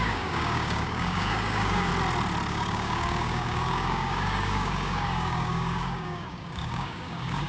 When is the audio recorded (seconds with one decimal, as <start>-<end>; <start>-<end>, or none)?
1.9-2.5